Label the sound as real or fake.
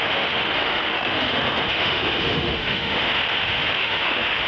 fake